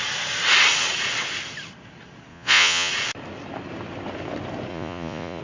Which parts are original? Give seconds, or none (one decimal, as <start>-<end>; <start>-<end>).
0.0-2.3; 2.9-4.7